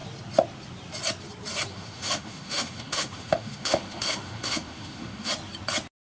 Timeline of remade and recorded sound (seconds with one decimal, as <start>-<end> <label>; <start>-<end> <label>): 0.0-1.7 recorded; 1.7-5.3 remade; 5.3-6.0 recorded